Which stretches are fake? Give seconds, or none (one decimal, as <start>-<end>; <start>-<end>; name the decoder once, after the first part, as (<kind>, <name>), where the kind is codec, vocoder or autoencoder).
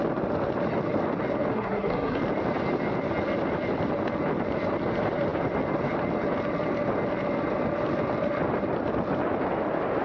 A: 1.5-2.2 (codec, SNAC)